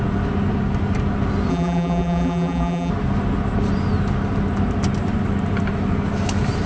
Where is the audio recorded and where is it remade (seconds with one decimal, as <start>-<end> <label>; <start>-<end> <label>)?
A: 0.0-1.5 recorded; 1.5-2.9 remade; 2.9-6.7 recorded